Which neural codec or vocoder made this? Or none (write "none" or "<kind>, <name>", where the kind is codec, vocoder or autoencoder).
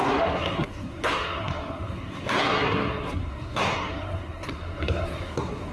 codec, SNAC